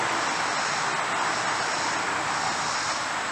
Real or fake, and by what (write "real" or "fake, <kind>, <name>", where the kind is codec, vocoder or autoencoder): real